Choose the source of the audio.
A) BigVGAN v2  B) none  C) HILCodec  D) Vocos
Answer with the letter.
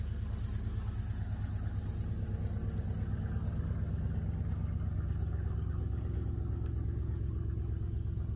B